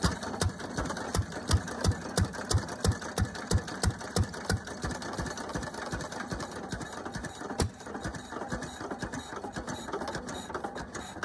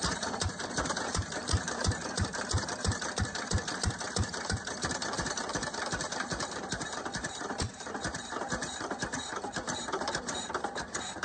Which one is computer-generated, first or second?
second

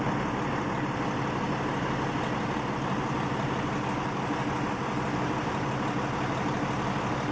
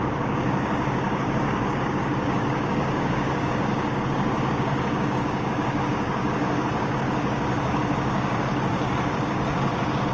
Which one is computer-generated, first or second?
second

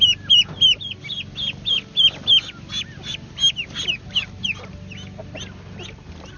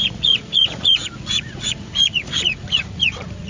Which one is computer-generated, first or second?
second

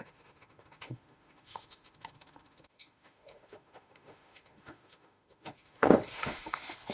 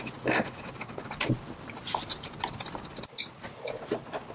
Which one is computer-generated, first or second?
first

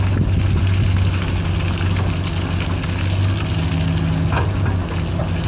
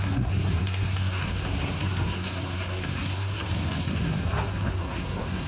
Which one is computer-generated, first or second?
second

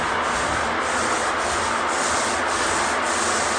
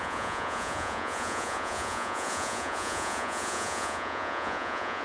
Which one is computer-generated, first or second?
second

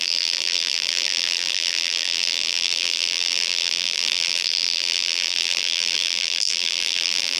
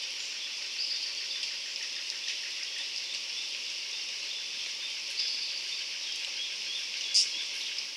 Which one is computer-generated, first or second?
first